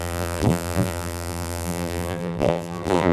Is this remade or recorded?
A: remade